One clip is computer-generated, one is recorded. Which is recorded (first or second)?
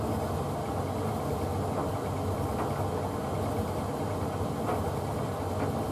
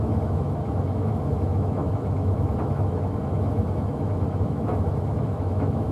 first